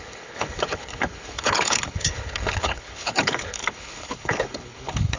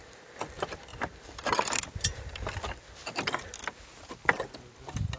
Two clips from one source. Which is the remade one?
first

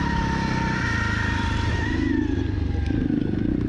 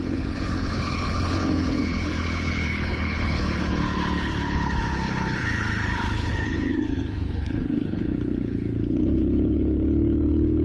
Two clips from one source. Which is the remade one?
second